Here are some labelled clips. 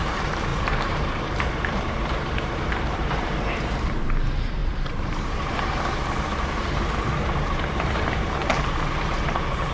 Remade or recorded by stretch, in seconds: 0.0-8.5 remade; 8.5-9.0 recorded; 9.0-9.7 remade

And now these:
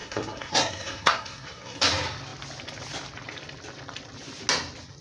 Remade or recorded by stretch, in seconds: 0.0-1.9 remade; 1.9-5.0 recorded

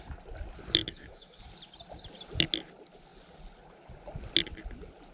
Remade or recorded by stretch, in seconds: 0.0-0.8 recorded; 0.8-1.4 remade; 1.4-5.1 recorded

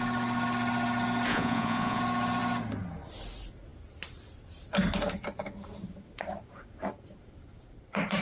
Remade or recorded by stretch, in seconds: 0.0-1.3 recorded; 1.3-2.0 remade; 2.0-8.2 recorded

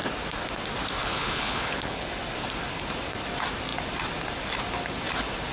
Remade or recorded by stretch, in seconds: 0.0-1.0 recorded; 1.0-2.1 remade; 2.1-5.5 recorded

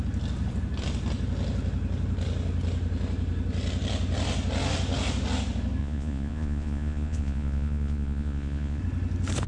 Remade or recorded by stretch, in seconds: 0.0-5.8 recorded; 5.8-8.8 remade; 8.8-9.5 recorded

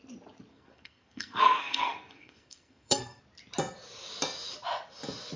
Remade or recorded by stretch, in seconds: 0.0-0.5 recorded; 0.5-3.2 remade; 3.2-5.4 recorded

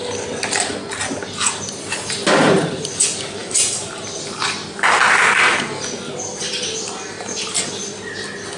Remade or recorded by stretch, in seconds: 0.0-8.6 recorded